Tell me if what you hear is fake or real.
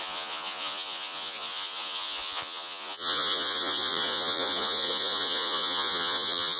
fake